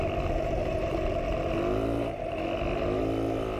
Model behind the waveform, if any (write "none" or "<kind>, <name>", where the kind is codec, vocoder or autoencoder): none